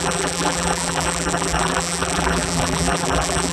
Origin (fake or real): fake